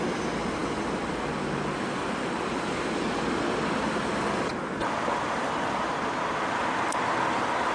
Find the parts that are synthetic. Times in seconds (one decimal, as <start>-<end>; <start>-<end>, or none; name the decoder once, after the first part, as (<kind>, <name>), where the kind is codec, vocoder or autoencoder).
0.6-4.3 (vocoder, BigVGAN v2)

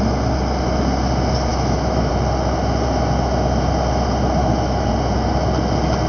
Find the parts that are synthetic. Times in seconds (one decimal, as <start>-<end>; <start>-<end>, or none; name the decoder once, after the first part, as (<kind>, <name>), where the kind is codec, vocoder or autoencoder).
1.5-2.1 (autoencoder, DAC-VAE); 4.4-4.9

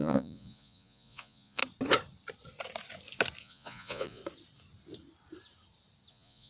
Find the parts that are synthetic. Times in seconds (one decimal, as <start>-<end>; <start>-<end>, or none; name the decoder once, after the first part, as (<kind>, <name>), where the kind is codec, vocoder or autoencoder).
0.0-1.6 (vocoder, Vocos); 3.4-4.2; 6.1-6.5

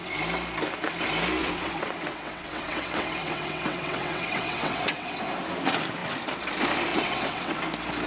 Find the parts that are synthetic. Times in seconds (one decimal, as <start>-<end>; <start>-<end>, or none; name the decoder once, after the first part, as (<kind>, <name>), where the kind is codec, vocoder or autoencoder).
1.4-5.2 (vocoder, WaveNeXt); 6.9-7.6

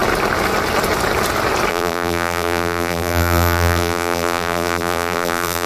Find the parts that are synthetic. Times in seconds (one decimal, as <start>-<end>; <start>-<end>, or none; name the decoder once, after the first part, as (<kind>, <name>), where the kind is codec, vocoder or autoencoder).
1.7-5.7 (vocoder, BigVGAN v2)

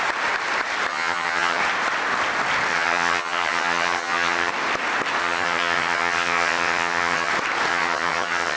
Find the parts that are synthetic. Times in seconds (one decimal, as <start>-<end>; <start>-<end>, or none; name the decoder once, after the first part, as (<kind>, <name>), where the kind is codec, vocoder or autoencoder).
0.9-1.6 (vocoder, HiFi-GAN); 2.7-4.5; 5.2-7.3; 7.7-8.6

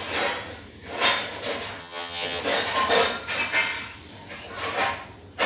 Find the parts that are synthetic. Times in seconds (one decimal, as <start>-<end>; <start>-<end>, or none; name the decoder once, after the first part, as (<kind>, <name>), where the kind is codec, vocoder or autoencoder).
1.8-2.4 (vocoder, HiFi-GAN)